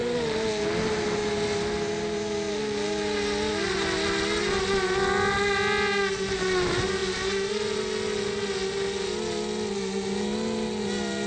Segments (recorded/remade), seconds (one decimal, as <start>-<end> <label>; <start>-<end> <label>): 0.0-11.3 recorded

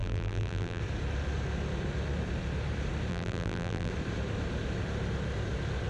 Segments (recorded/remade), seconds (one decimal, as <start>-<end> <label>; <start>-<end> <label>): 0.0-0.8 remade; 0.8-3.1 recorded; 3.1-3.9 remade; 3.9-5.9 recorded

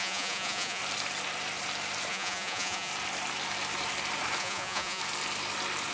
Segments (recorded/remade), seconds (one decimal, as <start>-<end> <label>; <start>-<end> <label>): 0.0-0.8 remade; 0.8-2.1 recorded; 2.1-2.9 remade; 2.9-4.4 recorded; 4.4-5.0 remade; 5.0-5.9 recorded

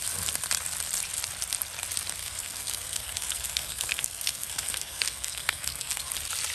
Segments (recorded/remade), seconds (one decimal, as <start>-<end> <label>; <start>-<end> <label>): 0.0-2.2 recorded; 2.2-6.1 remade; 6.1-6.5 recorded

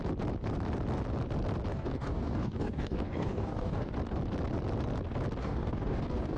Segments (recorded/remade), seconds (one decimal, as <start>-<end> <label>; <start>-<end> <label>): 0.0-1.7 recorded; 1.7-3.9 remade; 3.9-5.4 recorded; 5.4-6.4 remade

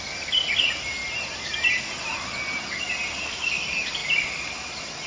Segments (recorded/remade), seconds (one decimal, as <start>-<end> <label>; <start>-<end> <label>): 0.0-5.1 recorded

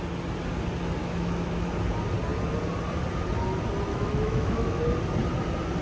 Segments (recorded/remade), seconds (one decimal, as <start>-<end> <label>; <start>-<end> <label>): 0.0-1.0 recorded; 1.0-1.7 remade; 1.7-3.9 recorded; 3.9-4.8 remade; 4.8-5.8 recorded

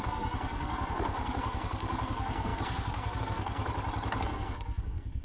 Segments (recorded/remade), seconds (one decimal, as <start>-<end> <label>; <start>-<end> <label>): 0.0-3.6 remade; 3.6-4.2 recorded; 4.2-5.2 remade